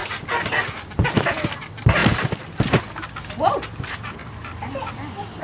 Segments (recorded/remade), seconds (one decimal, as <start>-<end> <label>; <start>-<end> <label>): 0.0-5.4 recorded